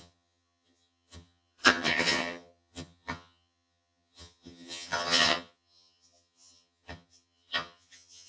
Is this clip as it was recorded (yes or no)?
no